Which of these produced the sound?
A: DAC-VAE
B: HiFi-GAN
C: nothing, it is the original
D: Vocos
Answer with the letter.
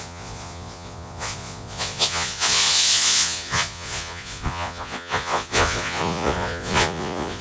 D